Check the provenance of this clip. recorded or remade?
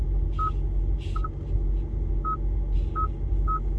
recorded